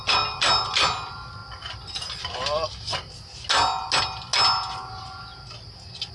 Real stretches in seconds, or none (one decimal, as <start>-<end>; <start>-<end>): 0.0-6.1